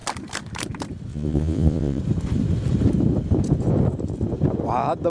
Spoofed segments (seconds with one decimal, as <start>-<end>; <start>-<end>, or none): 1.1-2.0